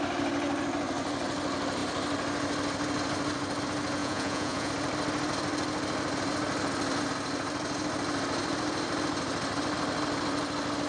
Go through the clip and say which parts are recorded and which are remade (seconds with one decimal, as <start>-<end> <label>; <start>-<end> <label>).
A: 0.0-4.0 recorded; 4.0-4.7 remade; 4.7-10.9 recorded